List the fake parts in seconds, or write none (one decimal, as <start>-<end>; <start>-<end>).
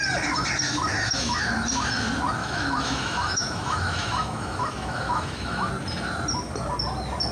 0.9-1.4; 2.4-5.7